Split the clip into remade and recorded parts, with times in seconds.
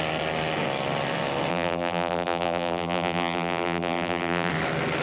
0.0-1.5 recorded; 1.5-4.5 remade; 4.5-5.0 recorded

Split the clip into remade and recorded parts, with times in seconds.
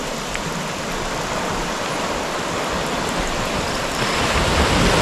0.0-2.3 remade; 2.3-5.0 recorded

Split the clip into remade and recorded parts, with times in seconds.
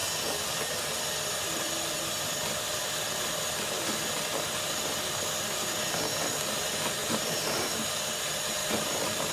0.0-7.0 recorded; 7.0-7.9 remade; 7.9-8.6 recorded; 8.6-9.3 remade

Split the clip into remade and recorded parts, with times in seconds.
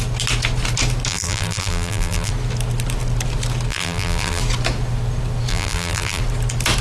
0.0-1.1 recorded; 1.1-2.3 remade; 2.3-3.7 recorded; 3.7-4.4 remade; 4.4-5.5 recorded; 5.5-6.2 remade; 6.2-6.8 recorded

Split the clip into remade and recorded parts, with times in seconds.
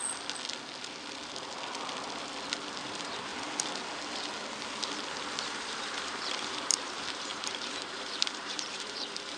0.0-2.8 recorded; 2.8-3.3 remade; 3.3-5.4 recorded; 5.4-9.4 remade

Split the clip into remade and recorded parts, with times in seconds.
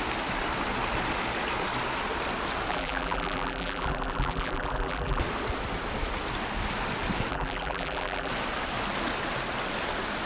0.0-2.7 recorded; 2.7-5.2 remade; 5.2-7.3 recorded; 7.3-8.3 remade; 8.3-10.3 recorded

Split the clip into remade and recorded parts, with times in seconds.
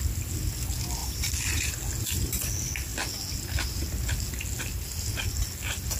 0.0-1.0 recorded; 1.0-1.7 remade; 1.7-6.0 recorded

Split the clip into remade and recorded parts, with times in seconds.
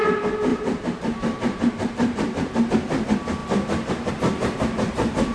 0.0-0.5 recorded; 0.5-2.7 remade; 2.7-5.3 recorded